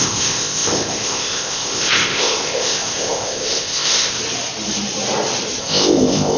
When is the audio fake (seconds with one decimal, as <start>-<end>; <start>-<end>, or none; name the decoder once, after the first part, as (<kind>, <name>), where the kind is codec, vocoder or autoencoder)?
0.0-4.2 (codec, ZipCodec); 5.6-6.4